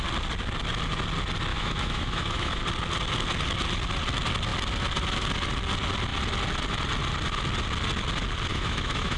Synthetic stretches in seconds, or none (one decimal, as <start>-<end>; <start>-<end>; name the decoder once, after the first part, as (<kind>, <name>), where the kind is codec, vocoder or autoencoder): 1.5-2.6 (autoencoder, DAC-VAE); 8.5-9.2